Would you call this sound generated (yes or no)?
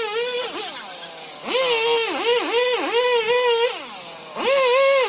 no